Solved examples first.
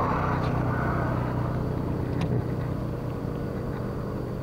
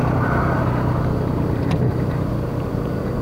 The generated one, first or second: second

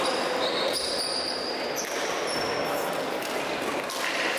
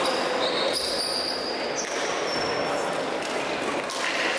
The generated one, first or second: first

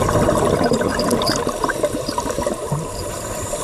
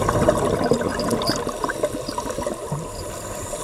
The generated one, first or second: first